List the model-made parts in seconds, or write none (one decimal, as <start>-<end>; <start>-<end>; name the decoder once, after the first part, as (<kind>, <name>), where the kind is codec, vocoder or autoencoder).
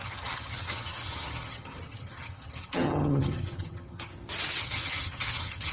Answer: 0.0-4.1 (vocoder, HiFi-GAN); 4.6-5.7